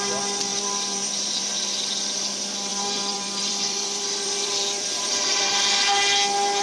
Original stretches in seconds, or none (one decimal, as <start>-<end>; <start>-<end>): 0.0-0.5; 2.3-2.7; 5.5-6.6